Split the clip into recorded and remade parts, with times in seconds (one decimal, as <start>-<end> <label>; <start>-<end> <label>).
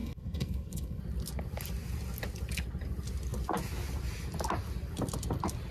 0.0-1.0 remade; 1.0-5.7 recorded